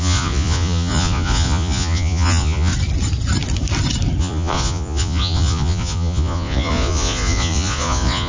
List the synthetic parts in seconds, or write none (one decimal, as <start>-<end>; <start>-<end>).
0.0-2.7; 4.2-8.3